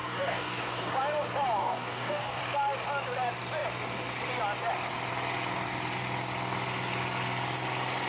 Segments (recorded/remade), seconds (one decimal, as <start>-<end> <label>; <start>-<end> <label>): 0.0-0.9 remade; 0.9-1.6 recorded; 1.6-2.4 remade; 2.4-8.1 recorded